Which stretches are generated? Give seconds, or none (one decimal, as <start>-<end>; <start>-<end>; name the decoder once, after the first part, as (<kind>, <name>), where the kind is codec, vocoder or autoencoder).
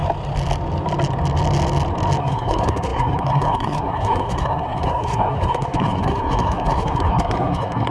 2.2-7.9 (codec, SNAC)